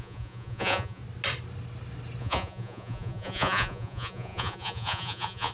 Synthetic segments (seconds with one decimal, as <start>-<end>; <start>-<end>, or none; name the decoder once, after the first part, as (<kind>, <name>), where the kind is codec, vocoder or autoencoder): 0.0-1.0 (vocoder, Vocos); 2.2-5.5